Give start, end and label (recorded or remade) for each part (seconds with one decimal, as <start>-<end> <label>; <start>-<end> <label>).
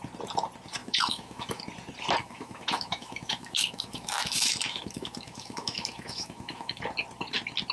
0.0-0.8 recorded; 0.8-1.6 remade; 1.6-2.2 recorded; 2.2-6.8 remade; 6.8-7.7 recorded